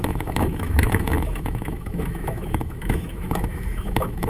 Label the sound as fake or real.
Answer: fake